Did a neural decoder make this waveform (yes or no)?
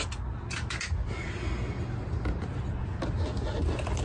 no